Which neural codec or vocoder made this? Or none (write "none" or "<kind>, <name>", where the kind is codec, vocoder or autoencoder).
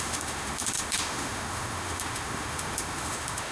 autoencoder, DAC-VAE